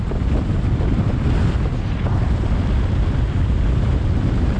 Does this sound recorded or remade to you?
recorded